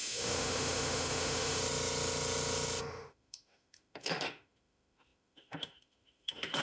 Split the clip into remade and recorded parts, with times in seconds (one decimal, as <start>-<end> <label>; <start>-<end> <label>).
0.0-1.6 remade; 1.6-2.8 recorded; 2.8-6.6 remade